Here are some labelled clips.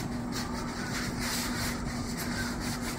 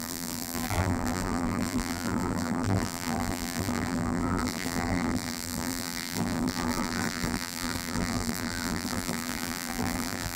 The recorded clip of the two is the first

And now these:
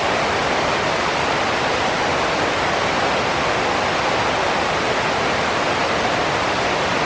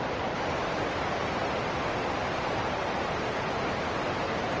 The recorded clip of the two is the first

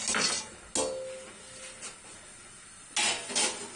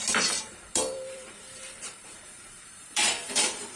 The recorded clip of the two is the first